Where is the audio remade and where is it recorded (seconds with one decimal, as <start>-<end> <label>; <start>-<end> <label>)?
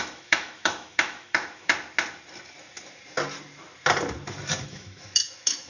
0.0-1.7 remade; 1.7-4.6 recorded; 4.6-5.7 remade